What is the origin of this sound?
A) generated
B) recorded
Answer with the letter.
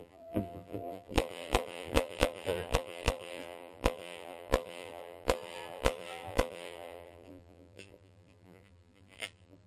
A